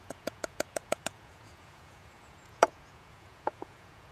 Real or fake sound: fake